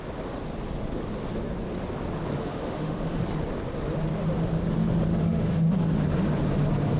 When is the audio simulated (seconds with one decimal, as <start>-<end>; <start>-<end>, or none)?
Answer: 2.4-3.2; 5.1-5.7